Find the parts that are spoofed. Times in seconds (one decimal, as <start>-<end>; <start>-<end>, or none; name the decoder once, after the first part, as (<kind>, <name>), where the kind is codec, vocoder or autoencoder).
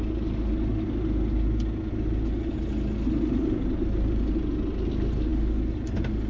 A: none